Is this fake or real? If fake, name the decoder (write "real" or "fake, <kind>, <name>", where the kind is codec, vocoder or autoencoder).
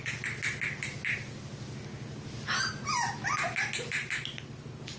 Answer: real